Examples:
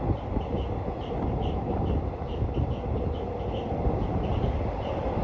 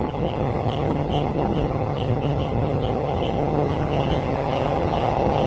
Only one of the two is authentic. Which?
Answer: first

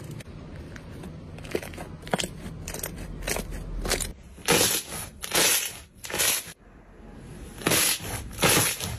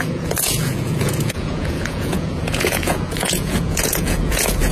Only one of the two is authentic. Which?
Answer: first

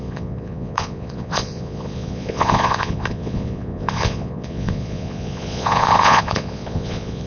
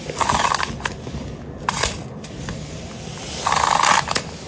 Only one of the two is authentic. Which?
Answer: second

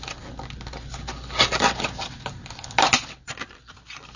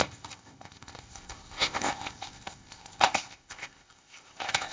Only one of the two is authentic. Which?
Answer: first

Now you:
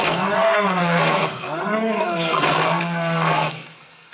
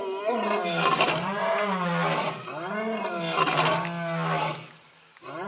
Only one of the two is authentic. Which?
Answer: second